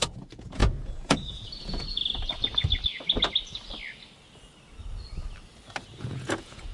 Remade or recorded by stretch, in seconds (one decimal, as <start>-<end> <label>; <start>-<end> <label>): 0.0-2.0 remade; 2.0-6.0 recorded; 6.0-6.7 remade